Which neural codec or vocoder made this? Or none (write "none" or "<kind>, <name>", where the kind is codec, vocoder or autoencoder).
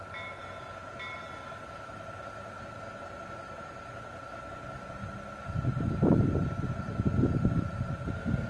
none